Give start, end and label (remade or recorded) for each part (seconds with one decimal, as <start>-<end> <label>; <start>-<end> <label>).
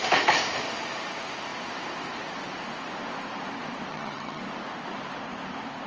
0.0-3.9 recorded; 3.9-4.4 remade; 4.4-5.9 recorded